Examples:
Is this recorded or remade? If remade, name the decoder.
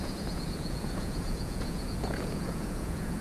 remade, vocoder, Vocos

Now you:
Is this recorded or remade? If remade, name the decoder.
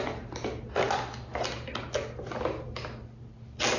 recorded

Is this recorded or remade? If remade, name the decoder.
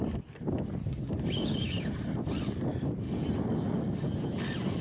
recorded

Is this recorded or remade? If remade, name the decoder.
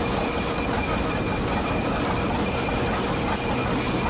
recorded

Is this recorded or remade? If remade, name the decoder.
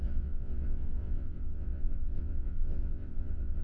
remade, vocoder, WaveNeXt